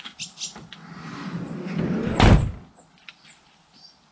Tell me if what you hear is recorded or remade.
remade